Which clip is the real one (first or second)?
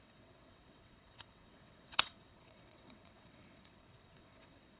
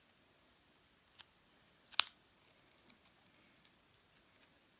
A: second